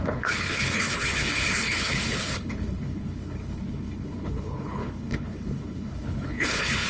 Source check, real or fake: fake